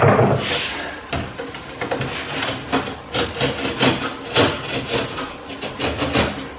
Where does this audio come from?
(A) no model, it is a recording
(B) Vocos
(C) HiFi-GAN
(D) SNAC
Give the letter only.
A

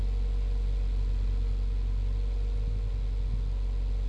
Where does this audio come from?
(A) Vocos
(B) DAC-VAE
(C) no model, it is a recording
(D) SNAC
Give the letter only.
C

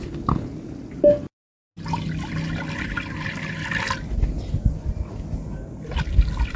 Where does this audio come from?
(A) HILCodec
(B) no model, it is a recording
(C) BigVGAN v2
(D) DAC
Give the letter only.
B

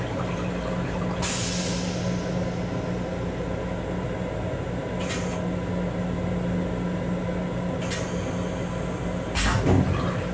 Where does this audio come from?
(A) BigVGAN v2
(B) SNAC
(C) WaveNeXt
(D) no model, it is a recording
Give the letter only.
D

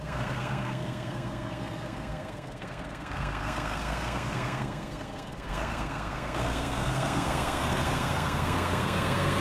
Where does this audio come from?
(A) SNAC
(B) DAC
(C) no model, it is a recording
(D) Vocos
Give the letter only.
A